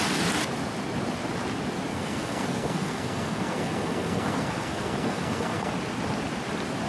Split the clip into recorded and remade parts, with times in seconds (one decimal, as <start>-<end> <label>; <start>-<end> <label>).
0.0-1.9 recorded; 1.9-5.7 remade; 5.7-6.9 recorded